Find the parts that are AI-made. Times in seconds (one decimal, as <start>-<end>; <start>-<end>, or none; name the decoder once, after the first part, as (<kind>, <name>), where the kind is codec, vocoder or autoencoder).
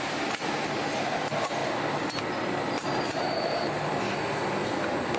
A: none